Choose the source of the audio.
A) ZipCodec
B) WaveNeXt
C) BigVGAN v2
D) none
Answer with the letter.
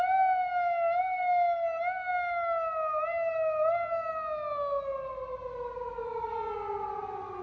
D